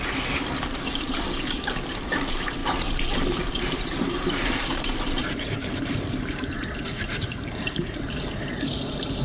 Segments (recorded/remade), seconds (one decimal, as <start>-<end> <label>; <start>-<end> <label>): 0.0-9.2 remade